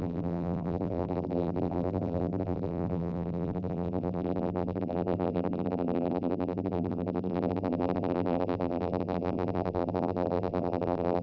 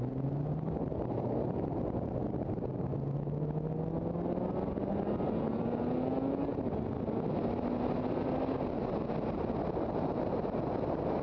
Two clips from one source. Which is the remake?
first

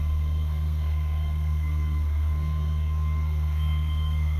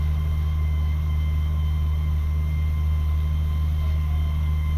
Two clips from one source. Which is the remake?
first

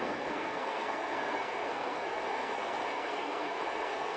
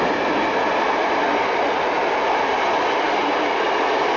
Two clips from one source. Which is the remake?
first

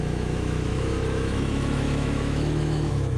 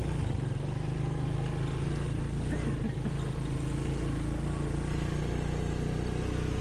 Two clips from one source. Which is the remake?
first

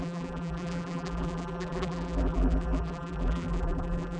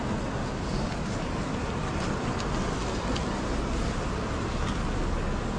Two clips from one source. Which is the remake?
first